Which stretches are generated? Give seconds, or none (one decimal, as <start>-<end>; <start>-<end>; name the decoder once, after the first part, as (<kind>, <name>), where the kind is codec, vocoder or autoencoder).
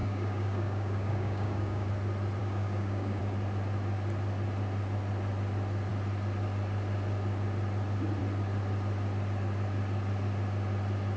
0.0-1.9 (codec, DAC); 2.4-3.2